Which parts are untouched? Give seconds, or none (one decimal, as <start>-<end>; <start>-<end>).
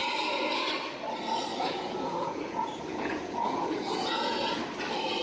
0.7-1.5; 4.6-5.2